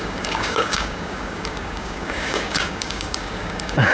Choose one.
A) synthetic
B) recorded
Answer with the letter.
A